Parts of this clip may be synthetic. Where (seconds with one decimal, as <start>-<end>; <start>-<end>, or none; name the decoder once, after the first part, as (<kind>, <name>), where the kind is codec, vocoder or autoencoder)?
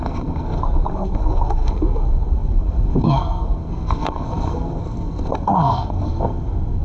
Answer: 0.0-6.8 (codec, SNAC)